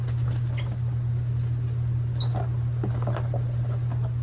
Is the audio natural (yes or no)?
yes